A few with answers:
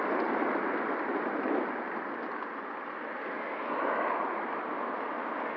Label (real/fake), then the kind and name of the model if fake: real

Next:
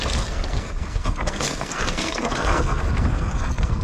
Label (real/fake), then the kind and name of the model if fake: fake, codec, SNAC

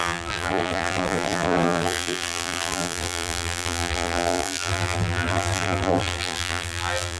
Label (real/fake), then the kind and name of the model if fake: fake, vocoder, BigVGAN v2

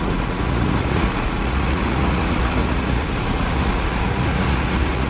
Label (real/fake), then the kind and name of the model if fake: fake, vocoder, Vocos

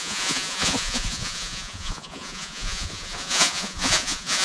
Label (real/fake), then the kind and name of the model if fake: fake, vocoder, Vocos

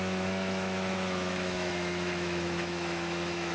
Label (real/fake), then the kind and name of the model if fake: fake, autoencoder, DAC-VAE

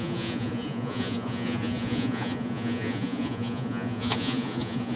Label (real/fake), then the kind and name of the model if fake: fake, vocoder, Vocos